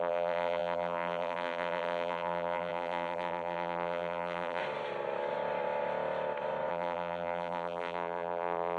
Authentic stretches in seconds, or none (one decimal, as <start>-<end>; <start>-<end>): 4.6-6.7